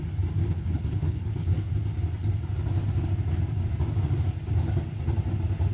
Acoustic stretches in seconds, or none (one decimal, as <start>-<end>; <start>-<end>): 0.0-0.4; 1.5-5.7